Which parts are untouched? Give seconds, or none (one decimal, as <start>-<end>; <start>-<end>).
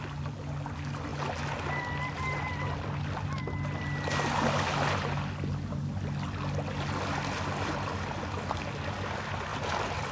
0.0-10.1